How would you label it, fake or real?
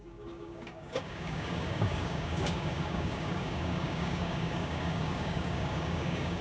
fake